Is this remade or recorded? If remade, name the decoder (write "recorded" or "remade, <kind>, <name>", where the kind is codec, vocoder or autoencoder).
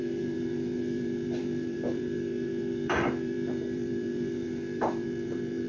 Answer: remade, vocoder, BigVGAN v2